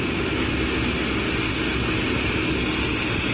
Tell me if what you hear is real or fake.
real